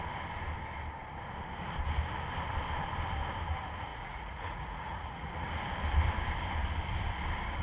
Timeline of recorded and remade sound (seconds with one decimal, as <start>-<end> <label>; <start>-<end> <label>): 0.0-3.9 recorded; 3.9-5.5 remade; 5.5-7.6 recorded